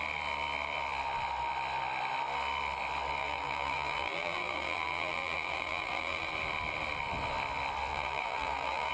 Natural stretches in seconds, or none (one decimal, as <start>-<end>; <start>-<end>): 0.0-3.2; 6.3-7.9